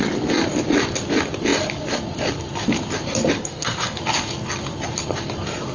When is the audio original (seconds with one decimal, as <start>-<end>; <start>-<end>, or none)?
0.0-3.4; 4.0-5.7

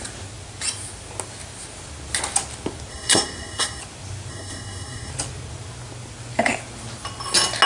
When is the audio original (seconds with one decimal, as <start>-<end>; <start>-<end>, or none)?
0.0-2.9; 3.8-4.3; 5.1-7.7

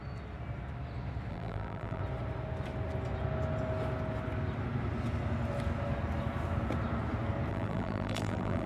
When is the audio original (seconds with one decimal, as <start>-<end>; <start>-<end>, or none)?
0.0-1.3; 2.0-7.5